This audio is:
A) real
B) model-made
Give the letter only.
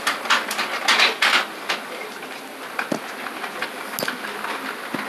A